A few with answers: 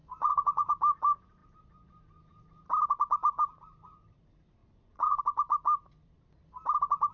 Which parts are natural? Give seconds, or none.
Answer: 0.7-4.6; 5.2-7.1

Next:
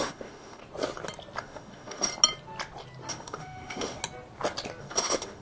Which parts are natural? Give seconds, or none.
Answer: 0.6-1.4; 2.1-3.1; 4.0-4.8

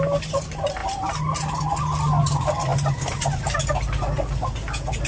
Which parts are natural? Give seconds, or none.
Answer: 0.8-1.6

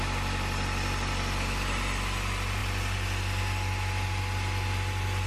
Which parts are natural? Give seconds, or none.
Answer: 0.0-5.3

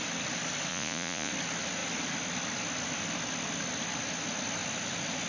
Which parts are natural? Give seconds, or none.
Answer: 0.0-0.7; 1.3-5.3

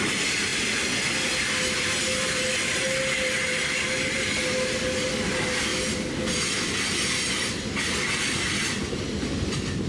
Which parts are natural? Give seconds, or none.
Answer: 0.0-9.9

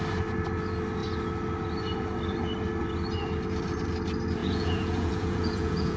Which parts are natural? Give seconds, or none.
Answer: 0.0-4.4